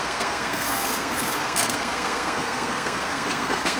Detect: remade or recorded remade